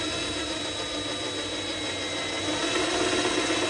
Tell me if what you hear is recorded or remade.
recorded